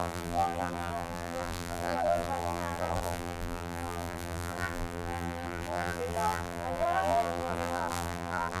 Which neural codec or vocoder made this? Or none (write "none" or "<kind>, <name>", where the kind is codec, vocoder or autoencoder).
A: vocoder, BigVGAN v2